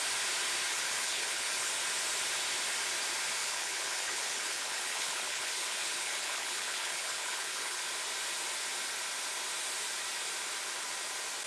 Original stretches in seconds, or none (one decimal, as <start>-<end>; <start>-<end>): 0.0-0.7; 1.7-3.4; 7.8-11.5